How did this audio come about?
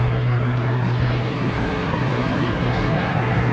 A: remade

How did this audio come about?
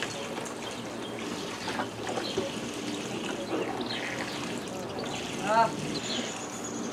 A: recorded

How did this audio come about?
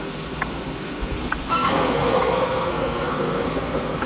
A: remade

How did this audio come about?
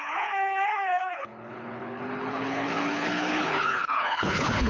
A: remade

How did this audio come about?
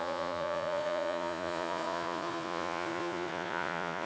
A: remade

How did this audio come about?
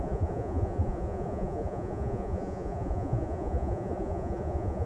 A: remade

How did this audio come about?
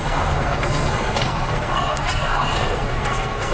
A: remade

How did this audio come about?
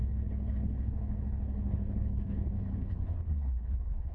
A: remade